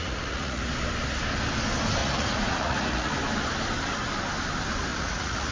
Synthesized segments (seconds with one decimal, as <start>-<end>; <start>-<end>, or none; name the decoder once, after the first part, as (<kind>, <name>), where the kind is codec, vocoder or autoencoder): 0.0-0.6 (vocoder, Vocos); 2.0-3.1; 4.9-5.5